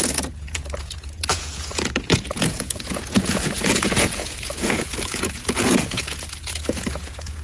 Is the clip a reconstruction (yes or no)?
yes